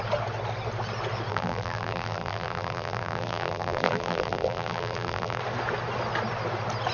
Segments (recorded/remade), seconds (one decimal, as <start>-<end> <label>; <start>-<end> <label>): 0.0-1.3 recorded; 1.3-5.4 remade; 5.4-6.9 recorded